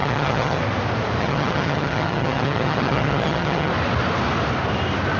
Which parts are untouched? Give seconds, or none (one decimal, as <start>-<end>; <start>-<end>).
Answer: 0.6-1.2; 3.7-5.2